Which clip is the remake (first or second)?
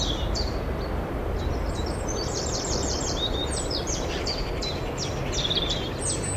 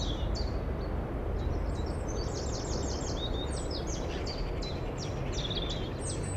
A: first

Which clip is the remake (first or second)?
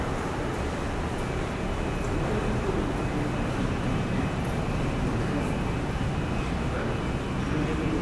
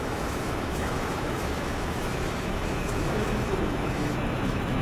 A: second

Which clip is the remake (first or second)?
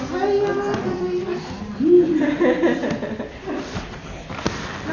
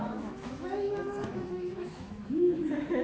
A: second